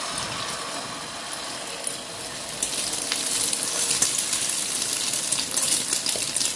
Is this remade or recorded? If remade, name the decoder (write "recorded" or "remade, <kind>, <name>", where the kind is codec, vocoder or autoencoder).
recorded